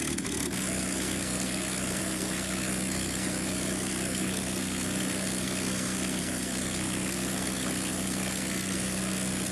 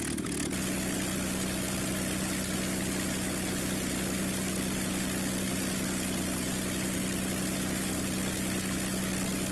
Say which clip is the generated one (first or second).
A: first